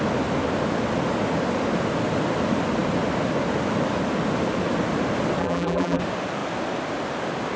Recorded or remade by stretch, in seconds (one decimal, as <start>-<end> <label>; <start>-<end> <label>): 0.0-5.4 recorded; 5.4-6.0 remade; 6.0-7.6 recorded